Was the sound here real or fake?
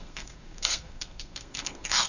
fake